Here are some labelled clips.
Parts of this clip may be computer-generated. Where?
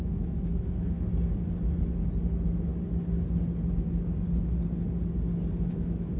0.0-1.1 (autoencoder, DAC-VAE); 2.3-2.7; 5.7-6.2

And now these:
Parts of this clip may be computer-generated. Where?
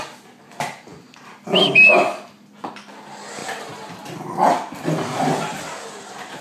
none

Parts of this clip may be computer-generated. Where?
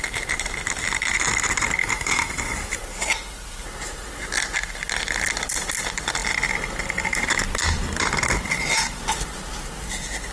1.8-2.8 (autoencoder, DAC-VAE)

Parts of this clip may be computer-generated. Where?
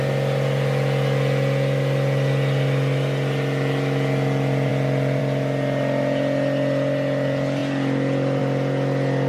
none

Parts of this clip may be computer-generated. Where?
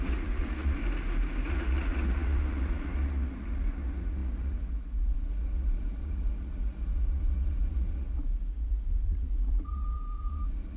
0.0-0.8 (vocoder, Vocos); 1.5-10.8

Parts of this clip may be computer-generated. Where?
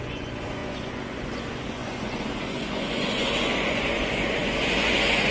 0.0-5.3 (vocoder, Vocos)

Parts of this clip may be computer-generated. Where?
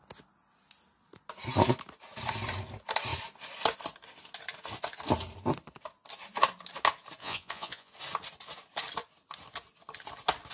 7.2-7.9 (vocoder, Vocos)